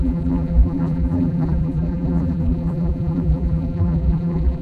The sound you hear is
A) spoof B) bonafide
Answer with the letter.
A